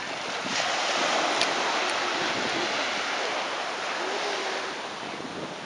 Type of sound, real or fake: real